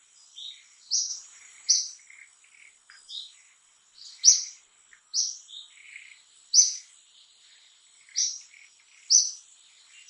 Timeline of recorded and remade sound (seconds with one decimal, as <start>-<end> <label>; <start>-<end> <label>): 0.0-1.1 recorded; 1.1-1.7 remade; 1.7-7.0 recorded; 7.0-9.0 remade; 9.0-10.1 recorded